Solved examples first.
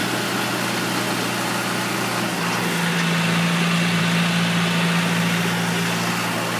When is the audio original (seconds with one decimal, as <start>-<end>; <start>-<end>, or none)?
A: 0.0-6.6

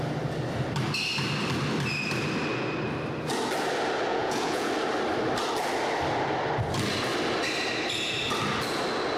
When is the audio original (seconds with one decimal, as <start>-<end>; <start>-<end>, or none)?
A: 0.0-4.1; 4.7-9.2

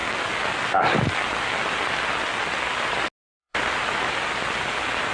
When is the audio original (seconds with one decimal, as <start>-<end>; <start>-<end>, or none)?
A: 0.0-3.4; 4.1-5.1